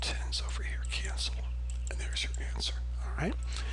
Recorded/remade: recorded